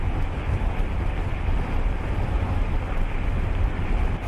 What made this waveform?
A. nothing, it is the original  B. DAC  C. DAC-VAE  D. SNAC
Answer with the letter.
A